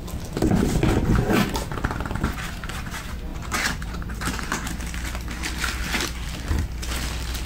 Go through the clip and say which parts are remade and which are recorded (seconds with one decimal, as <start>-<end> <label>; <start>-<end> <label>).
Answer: 0.0-3.3 recorded; 3.3-4.7 remade; 4.7-7.5 recorded